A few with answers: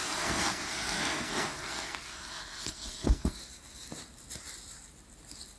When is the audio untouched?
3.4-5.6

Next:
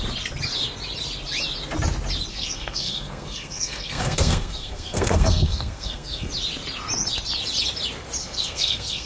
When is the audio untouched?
0.0-2.3; 6.3-8.2